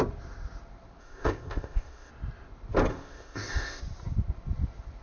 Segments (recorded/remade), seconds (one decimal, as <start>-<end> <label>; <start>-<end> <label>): 0.0-1.0 recorded; 1.0-2.1 remade; 2.1-2.9 recorded; 2.9-3.8 remade; 3.8-5.0 recorded